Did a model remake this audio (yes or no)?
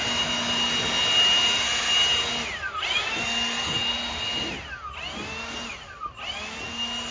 no